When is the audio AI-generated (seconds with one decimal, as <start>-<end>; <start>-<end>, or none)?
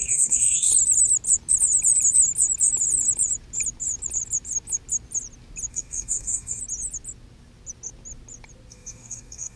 0.0-0.7; 5.7-6.6; 8.7-9.6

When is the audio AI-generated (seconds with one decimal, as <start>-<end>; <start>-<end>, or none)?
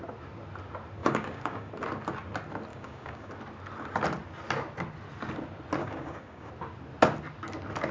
1.0-1.7; 2.7-3.3; 5.8-6.5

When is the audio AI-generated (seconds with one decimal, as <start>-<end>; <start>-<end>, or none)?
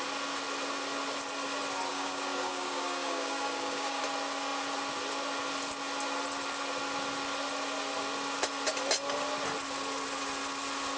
1.9-4.0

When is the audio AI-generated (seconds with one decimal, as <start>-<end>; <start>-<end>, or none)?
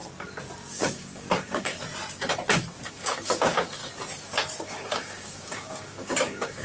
0.7-1.7; 2.9-3.8; 4.6-6.6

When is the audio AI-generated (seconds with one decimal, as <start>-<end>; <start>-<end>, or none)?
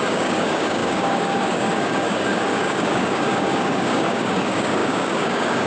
0.0-5.7